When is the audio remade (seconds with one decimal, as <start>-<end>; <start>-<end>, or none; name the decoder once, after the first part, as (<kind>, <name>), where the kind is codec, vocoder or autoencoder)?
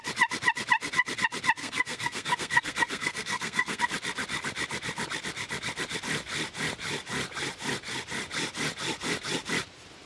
1.6-3.8 (codec, SNAC)